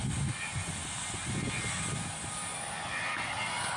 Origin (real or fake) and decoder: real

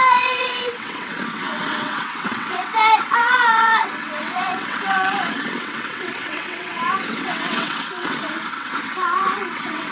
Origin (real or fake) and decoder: fake, vocoder, WaveNeXt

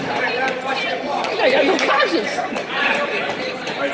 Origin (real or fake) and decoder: fake, vocoder, BigVGAN v2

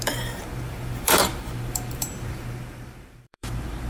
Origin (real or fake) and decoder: fake, vocoder, BigVGAN v2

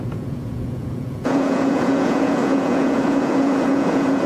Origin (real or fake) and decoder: fake, vocoder, Vocos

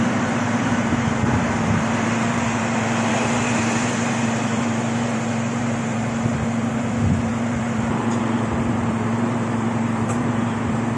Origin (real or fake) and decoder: fake, vocoder, BigVGAN v2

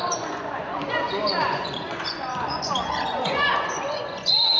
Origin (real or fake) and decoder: fake, vocoder, Vocos